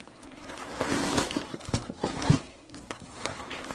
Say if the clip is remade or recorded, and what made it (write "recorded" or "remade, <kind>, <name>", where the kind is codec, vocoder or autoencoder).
remade, codec, SNAC